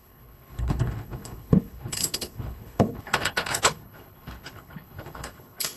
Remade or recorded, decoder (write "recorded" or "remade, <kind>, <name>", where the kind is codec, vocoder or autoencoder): remade, codec, HILCodec